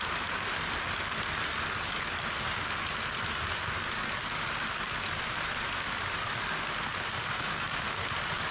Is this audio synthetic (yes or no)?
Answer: no